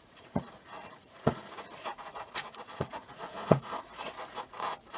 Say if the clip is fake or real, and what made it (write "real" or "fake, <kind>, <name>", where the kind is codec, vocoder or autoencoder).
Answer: fake, vocoder, Vocos